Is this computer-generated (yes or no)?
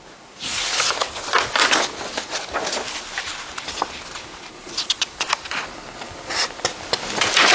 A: no